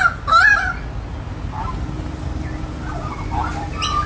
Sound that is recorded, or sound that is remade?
recorded